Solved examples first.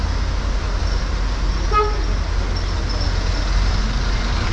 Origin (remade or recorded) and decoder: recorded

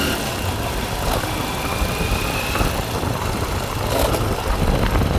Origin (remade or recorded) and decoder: recorded